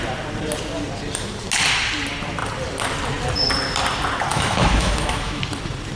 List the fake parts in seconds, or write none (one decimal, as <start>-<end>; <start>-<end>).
4.3-5.4